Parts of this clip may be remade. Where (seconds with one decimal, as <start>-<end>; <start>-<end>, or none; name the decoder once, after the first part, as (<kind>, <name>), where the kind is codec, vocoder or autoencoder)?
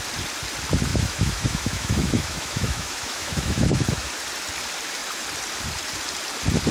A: 0.9-4.1 (autoencoder, DAC-VAE)